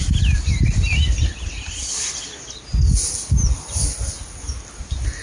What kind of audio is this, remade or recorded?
recorded